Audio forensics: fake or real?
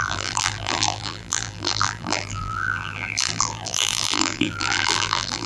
fake